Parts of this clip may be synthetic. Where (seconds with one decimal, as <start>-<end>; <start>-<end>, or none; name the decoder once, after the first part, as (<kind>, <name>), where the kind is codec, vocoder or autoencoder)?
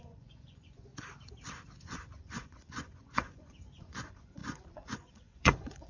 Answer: 0.0-0.9 (vocoder, Vocos); 1.8-5.9